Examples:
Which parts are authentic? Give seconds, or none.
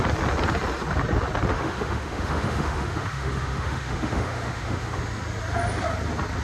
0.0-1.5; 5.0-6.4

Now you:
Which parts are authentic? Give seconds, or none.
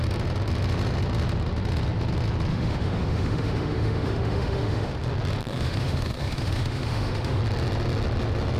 0.0-2.5; 4.9-5.5; 7.4-8.6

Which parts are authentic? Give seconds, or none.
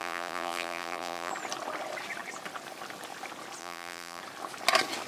1.3-3.6; 4.2-5.1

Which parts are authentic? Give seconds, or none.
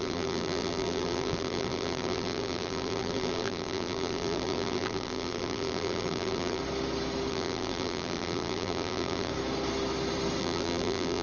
6.6-7.3; 9.3-10.4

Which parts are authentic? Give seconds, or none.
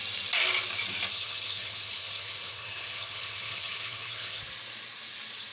0.0-1.1; 4.4-5.5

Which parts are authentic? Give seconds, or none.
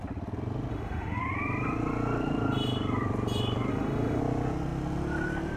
0.0-0.7; 1.2-3.7; 4.2-5.6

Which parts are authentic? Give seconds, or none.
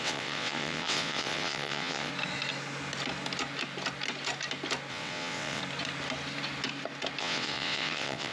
2.1-4.9; 5.6-7.2